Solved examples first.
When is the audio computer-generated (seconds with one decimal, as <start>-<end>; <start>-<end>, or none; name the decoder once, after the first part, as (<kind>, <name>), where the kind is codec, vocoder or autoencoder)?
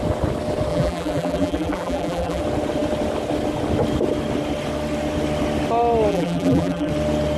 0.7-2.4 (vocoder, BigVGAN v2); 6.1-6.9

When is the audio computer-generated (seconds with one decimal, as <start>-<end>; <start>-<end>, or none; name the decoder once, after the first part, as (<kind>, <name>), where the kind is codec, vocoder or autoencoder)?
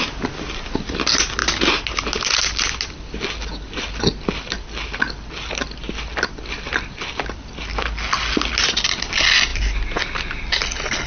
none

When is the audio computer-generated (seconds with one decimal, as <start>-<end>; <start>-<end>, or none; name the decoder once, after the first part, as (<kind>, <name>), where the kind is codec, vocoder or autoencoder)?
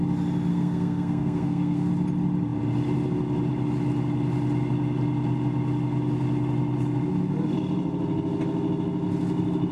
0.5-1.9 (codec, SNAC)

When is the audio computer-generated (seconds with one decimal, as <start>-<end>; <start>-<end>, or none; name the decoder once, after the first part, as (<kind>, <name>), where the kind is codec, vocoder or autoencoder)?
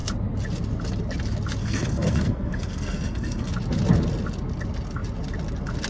1.6-3.5 (codec, SNAC)